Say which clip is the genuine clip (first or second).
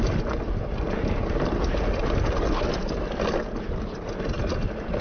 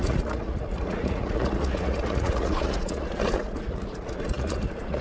first